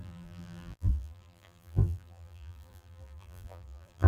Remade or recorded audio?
remade